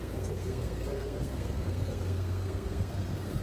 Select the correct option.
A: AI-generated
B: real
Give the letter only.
A